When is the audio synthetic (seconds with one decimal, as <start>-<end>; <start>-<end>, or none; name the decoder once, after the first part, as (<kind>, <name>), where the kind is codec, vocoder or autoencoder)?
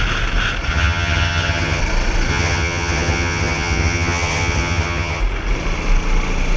0.7-1.8 (vocoder, HiFi-GAN); 2.3-5.2